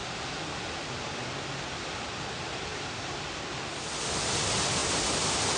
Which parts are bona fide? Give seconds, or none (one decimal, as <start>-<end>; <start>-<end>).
0.0-2.7; 3.4-4.8